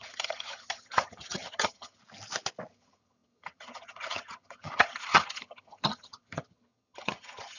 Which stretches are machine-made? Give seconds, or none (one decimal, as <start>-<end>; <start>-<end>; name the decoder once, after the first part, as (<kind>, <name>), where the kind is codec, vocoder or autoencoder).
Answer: 0.0-2.0 (vocoder, HiFi-GAN); 2.7-7.6

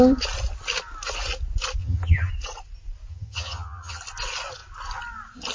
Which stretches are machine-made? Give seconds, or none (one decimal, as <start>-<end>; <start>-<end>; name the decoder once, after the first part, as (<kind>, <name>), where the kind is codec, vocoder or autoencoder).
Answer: 1.8-2.3 (vocoder, HiFi-GAN); 3.1-4.0

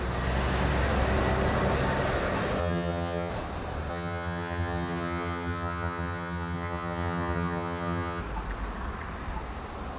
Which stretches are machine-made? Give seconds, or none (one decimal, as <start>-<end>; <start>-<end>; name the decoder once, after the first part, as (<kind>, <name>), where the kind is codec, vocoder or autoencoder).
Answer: 2.6-3.3 (vocoder, HiFi-GAN); 3.9-8.2

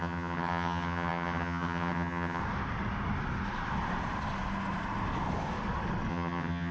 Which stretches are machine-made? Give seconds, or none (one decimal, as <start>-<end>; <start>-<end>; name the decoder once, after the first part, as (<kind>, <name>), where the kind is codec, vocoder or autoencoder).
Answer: 0.0-2.4 (vocoder, HiFi-GAN); 6.1-6.7

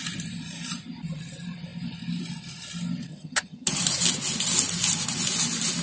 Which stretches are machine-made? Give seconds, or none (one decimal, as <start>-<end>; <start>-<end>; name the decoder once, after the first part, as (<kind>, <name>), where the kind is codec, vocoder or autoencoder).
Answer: 3.1-3.8 (vocoder, HiFi-GAN)

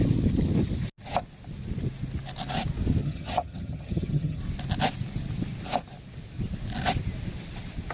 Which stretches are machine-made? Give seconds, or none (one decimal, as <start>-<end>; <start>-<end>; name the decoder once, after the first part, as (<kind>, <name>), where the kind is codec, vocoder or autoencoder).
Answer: 3.0-4.4 (vocoder, HiFi-GAN)